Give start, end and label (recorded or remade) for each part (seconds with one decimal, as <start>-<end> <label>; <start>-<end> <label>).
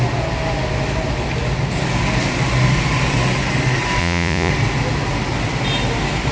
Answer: 0.0-4.0 recorded; 4.0-4.5 remade; 4.5-6.3 recorded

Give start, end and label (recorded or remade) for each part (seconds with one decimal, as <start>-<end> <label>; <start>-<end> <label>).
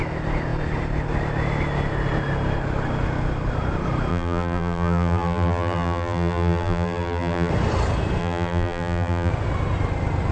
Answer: 0.0-4.1 recorded; 4.1-7.5 remade; 7.5-8.2 recorded; 8.2-9.3 remade; 9.3-10.3 recorded